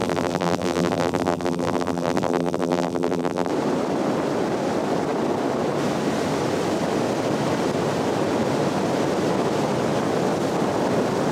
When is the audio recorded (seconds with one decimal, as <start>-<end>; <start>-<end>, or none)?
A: 3.5-11.3